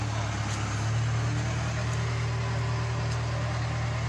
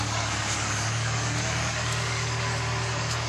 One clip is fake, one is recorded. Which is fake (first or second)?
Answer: second